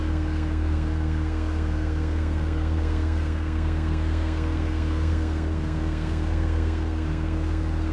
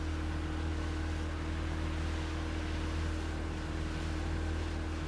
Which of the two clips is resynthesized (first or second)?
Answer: first